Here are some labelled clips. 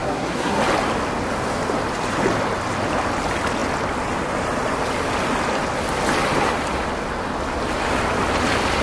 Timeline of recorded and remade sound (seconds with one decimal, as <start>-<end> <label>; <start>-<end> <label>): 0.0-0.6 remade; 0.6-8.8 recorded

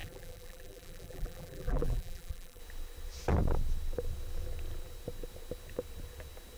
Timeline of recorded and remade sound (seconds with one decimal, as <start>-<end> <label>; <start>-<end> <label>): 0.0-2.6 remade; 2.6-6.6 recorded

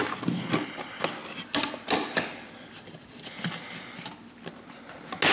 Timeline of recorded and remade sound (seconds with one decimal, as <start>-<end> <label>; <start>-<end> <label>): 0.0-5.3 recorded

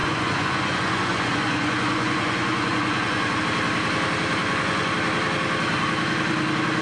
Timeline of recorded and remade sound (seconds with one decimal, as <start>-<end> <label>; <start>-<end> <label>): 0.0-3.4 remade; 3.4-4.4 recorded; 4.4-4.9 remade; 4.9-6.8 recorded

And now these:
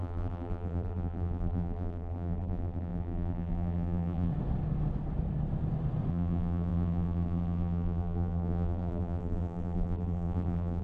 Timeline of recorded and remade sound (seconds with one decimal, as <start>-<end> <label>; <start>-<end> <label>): 0.0-4.3 remade; 4.3-6.1 recorded; 6.1-10.8 remade

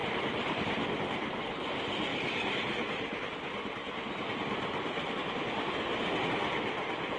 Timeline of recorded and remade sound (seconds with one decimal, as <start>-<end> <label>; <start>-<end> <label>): 0.0-7.2 recorded